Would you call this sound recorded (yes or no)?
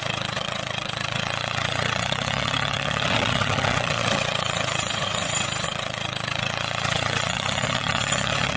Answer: no